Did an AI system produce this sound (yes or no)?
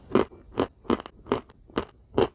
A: no